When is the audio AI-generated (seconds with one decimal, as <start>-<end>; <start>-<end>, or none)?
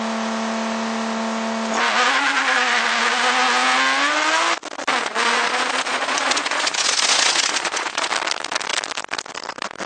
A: 4.9-8.1